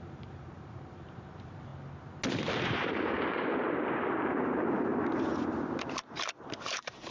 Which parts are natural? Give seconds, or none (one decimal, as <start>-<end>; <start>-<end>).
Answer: 1.7-2.5; 4.9-6.4